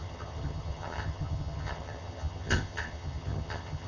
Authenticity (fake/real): fake